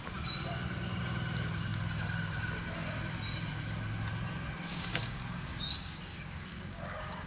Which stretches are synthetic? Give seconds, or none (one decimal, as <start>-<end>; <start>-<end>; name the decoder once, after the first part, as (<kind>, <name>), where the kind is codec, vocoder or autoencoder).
4.7-7.3 (codec, DAC)